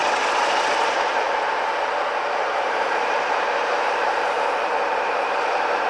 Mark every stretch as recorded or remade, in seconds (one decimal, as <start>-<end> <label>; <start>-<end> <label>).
0.0-2.2 recorded; 2.2-5.9 remade